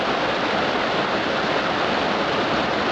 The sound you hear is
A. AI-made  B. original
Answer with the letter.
B